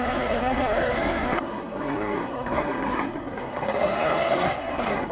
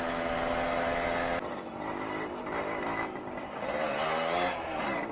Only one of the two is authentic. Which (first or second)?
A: second